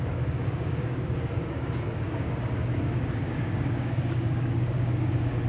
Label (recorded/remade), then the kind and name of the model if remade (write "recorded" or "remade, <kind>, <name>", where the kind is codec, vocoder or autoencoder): remade, codec, DAC